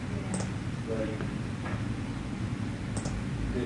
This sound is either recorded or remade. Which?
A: recorded